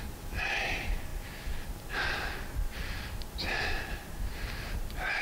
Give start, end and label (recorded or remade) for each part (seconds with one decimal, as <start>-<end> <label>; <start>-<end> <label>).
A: 0.0-5.2 recorded